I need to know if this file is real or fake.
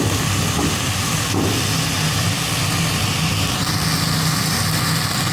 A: real